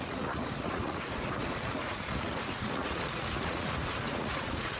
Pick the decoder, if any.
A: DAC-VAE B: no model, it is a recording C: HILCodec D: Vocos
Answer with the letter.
D